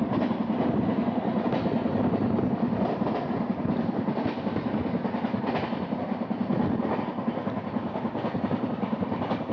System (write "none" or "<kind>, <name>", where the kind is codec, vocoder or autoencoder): vocoder, BigVGAN v2